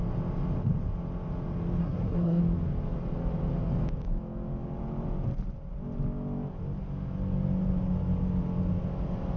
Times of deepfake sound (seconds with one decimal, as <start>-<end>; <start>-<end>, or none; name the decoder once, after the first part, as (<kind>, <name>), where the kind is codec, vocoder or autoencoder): 1.8-2.4 (codec, SNAC)